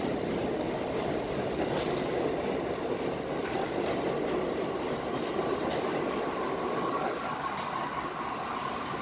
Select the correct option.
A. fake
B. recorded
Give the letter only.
B